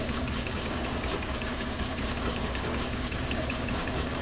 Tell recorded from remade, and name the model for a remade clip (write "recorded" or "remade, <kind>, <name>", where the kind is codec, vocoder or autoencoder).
remade, codec, DAC